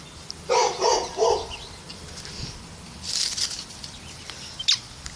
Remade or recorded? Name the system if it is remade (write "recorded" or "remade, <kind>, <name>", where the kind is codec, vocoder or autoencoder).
recorded